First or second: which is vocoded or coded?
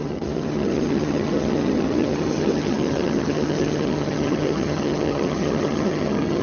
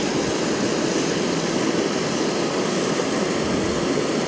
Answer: first